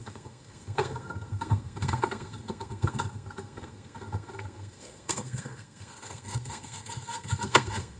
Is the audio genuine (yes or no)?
no